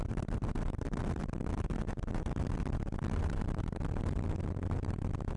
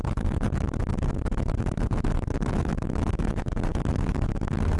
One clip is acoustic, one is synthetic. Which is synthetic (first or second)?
second